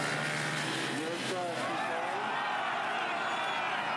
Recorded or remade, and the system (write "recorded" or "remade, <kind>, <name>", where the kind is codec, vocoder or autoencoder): recorded